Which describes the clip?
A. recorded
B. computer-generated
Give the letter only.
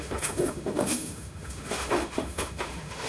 B